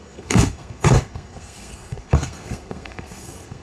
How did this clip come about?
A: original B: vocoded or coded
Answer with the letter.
B